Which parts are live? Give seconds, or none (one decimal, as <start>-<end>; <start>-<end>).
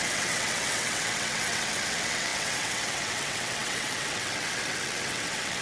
none